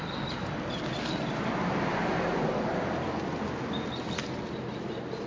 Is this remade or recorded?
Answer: recorded